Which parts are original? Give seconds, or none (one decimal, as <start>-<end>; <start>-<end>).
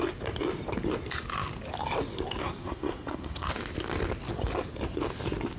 0.0-2.4; 3.5-5.6